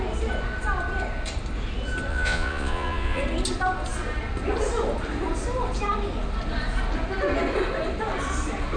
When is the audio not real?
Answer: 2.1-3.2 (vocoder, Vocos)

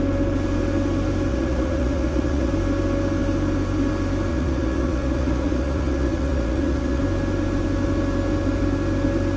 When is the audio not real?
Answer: 1.3-2.5 (vocoder, Vocos); 4.3-7.0

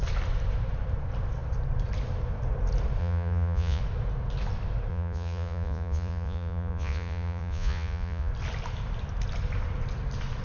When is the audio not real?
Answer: 3.0-3.8 (vocoder, Vocos); 4.9-8.3

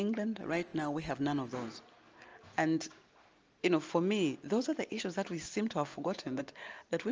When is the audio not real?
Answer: 5.9-6.4 (vocoder, Vocos)

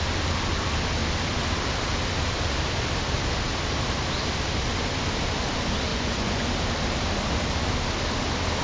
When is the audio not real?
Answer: 5.9-6.5 (vocoder, Vocos)